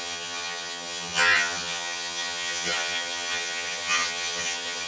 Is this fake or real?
fake